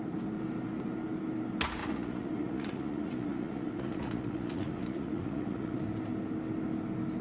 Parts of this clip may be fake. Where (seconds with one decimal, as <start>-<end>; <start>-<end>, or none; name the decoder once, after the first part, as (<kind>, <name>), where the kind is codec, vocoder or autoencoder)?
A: 1.8-5.8 (vocoder, Vocos)